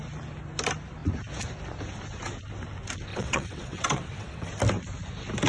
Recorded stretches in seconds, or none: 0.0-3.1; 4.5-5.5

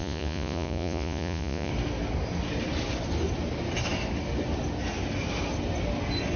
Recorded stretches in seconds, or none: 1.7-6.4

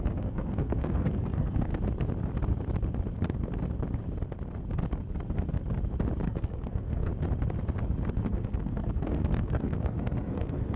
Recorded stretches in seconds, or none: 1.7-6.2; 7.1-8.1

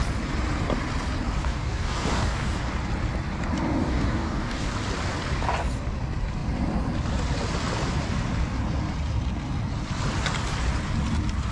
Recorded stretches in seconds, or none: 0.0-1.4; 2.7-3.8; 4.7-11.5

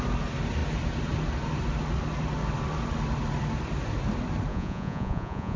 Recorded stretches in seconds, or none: 0.0-4.5

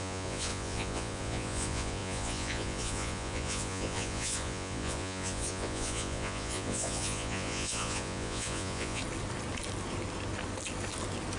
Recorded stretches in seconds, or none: 9.0-11.4

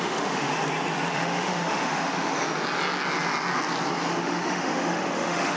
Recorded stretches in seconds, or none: 0.5-1.1; 2.3-4.2

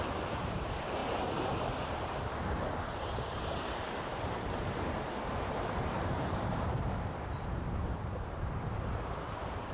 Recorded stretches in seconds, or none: none